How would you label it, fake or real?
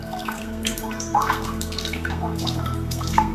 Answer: fake